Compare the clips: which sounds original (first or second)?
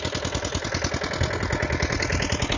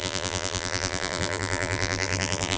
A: first